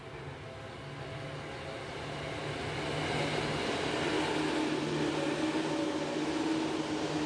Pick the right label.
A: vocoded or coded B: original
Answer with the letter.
B